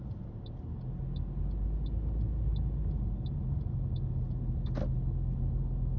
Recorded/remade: recorded